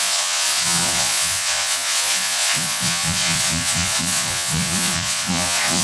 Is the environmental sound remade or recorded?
remade